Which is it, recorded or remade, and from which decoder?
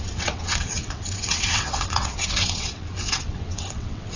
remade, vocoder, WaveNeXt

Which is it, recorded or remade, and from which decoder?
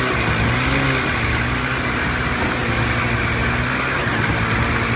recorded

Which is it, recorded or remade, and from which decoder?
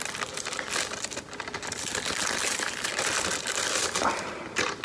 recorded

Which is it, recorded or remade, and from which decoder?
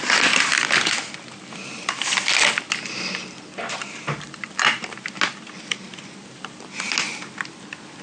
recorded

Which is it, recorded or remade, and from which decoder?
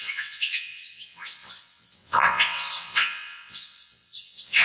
remade, vocoder, WaveNeXt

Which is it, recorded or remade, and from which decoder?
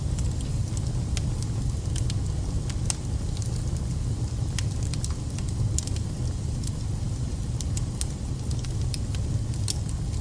recorded